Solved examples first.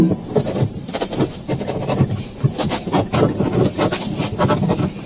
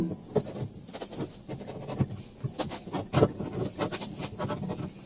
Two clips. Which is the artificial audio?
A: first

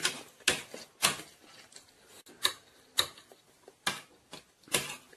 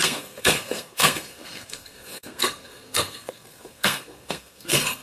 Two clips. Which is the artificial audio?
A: second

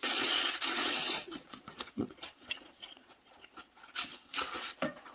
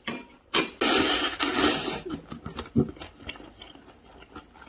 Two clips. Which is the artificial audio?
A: first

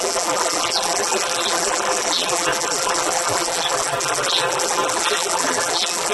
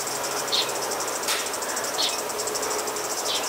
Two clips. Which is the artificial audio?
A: first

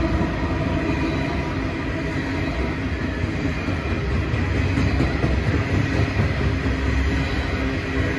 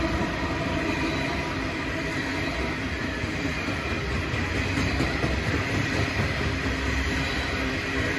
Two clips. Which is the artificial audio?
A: second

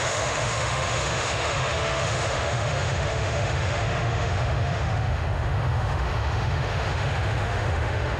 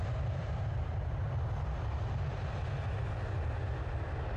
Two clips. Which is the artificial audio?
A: first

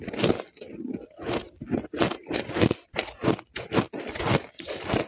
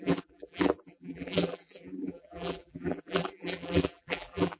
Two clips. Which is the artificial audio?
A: second